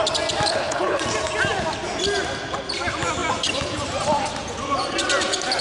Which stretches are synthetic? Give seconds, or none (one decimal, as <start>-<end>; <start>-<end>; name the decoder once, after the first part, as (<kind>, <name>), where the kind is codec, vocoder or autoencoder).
0.5-1.0 (codec, HILCodec)